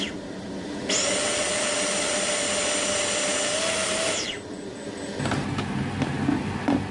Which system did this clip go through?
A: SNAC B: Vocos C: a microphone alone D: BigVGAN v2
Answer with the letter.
C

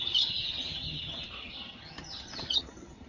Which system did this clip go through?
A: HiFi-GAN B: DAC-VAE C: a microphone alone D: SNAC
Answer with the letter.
A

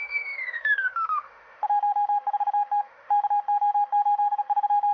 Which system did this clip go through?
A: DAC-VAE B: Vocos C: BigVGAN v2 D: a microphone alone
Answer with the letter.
A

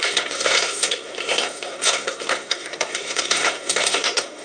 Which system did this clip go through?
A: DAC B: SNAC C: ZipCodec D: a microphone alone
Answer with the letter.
B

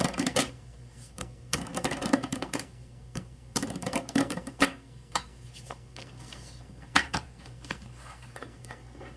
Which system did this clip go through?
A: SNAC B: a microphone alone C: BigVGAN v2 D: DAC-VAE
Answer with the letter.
A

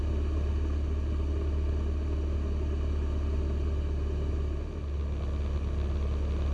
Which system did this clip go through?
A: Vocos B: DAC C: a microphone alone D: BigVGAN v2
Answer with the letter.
C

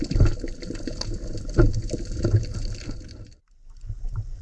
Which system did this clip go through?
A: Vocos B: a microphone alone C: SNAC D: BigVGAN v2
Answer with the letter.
B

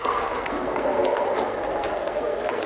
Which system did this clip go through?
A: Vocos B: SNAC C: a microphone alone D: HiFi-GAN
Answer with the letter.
B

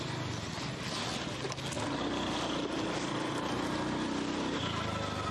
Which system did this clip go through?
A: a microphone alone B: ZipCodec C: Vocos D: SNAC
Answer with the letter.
A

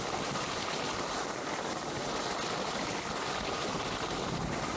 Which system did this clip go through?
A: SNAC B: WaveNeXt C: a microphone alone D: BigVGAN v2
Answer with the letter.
C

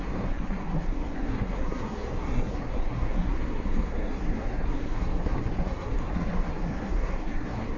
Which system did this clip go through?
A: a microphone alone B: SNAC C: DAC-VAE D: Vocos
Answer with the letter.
B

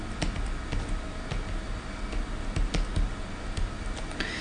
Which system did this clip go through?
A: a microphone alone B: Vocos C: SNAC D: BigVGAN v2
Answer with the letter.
A